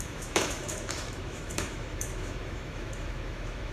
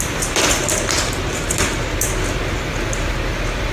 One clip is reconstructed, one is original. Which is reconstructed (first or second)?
first